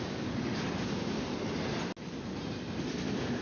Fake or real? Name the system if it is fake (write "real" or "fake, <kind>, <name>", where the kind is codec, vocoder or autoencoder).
real